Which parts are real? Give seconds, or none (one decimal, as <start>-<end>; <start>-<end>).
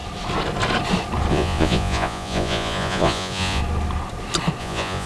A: 0.0-1.3; 3.6-4.6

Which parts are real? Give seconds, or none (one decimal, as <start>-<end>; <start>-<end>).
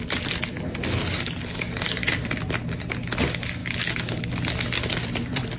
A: 0.0-2.0; 2.5-5.6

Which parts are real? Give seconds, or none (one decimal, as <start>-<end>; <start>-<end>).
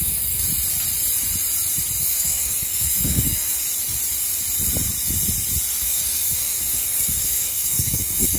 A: 0.4-2.0; 3.5-5.8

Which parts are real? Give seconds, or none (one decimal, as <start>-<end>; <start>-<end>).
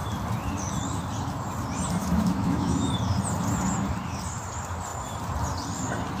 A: 0.0-2.0; 2.9-6.2